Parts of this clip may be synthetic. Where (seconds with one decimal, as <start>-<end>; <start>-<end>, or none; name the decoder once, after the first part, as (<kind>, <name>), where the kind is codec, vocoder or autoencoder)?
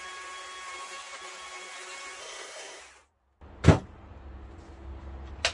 2.2-2.8 (codec, SNAC)